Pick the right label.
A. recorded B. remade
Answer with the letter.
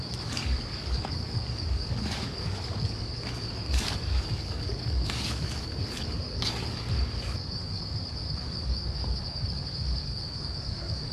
B